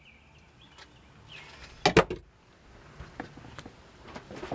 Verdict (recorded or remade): recorded